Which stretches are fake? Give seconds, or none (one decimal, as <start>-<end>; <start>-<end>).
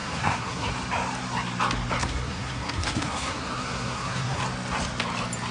0.0-0.7; 2.0-4.4